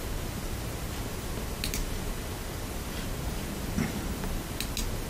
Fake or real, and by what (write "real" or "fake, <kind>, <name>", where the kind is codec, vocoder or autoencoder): real